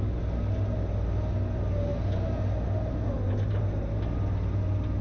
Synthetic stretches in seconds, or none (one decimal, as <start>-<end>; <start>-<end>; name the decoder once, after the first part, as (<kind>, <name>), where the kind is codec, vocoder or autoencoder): none